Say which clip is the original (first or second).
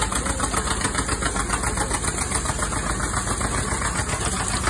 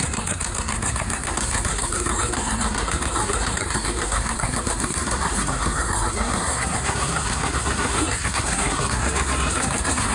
first